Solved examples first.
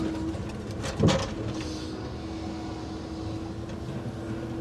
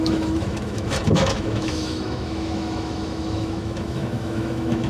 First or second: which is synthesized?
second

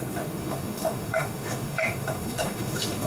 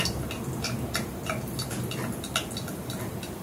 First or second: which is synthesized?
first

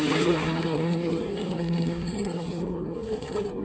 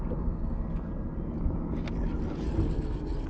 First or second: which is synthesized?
first